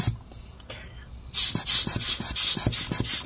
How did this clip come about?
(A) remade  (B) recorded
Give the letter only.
B